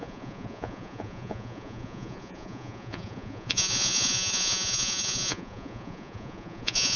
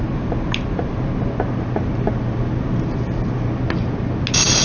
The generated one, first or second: first